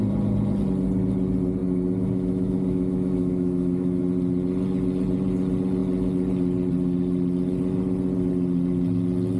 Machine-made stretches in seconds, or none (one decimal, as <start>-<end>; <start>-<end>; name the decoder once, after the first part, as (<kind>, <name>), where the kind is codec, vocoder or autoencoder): 1.6-4.0 (autoencoder, DAC-VAE)